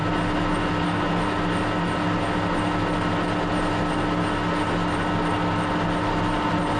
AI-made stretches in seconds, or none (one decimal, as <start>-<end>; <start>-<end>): none